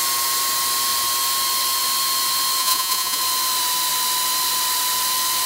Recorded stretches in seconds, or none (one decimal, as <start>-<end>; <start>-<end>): 0.0-2.6; 3.2-5.5